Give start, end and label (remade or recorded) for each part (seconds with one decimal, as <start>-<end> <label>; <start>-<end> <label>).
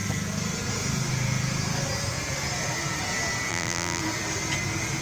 0.0-3.5 recorded; 3.5-4.0 remade; 4.0-5.0 recorded